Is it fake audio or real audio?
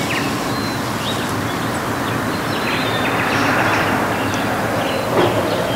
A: real